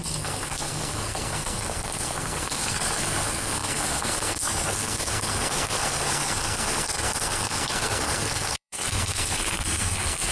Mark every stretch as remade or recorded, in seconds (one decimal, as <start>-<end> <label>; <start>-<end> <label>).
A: 0.0-10.3 remade